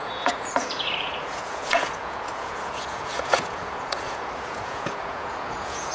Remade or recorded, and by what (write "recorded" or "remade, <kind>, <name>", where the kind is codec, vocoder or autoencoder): remade, vocoder, Vocos